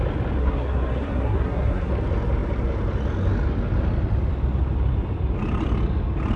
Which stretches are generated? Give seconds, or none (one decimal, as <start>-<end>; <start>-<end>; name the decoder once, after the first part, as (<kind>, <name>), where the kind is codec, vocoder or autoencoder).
0.4-1.9 (codec, SNAC)